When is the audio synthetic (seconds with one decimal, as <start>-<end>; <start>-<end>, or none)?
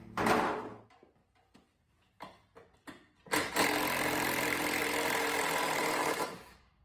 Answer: 6.0-6.8